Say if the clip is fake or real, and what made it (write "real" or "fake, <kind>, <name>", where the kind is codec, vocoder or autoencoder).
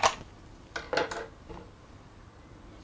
real